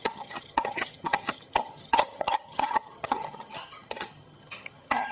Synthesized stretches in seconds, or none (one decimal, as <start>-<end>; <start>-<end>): 0.0-5.1